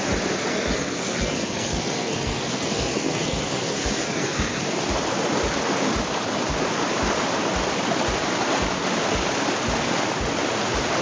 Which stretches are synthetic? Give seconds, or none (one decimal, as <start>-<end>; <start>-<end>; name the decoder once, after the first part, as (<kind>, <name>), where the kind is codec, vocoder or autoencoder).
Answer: 0.5-4.6 (codec, SNAC)